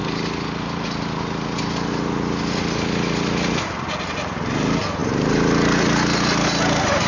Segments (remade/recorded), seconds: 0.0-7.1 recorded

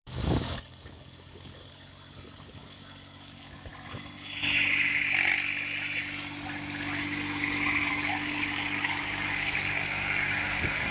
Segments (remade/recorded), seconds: 0.0-3.7 remade; 3.7-7.9 recorded; 7.9-10.9 remade

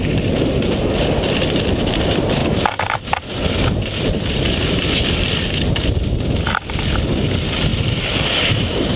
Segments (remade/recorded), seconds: 0.0-9.0 recorded

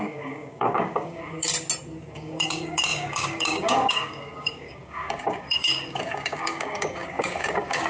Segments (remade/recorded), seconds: 0.0-1.5 remade; 1.5-2.1 recorded; 2.1-7.9 remade

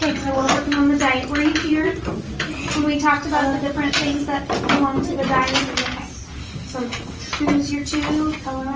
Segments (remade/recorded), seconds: 0.0-6.4 recorded; 6.4-7.2 remade; 7.2-8.8 recorded

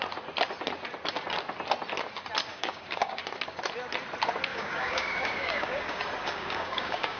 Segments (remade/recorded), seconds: 0.0-2.5 recorded; 2.5-3.2 remade; 3.2-4.5 recorded; 4.5-7.2 remade

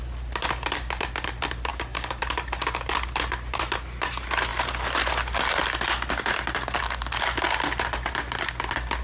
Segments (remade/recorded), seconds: 0.0-1.7 recorded; 1.7-2.2 remade; 2.2-9.0 recorded